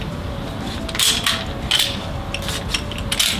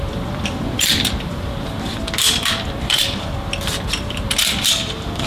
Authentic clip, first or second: first